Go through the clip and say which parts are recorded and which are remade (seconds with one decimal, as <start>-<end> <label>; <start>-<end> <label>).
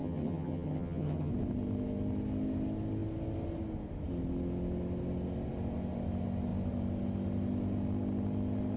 0.0-1.3 remade; 1.3-8.8 recorded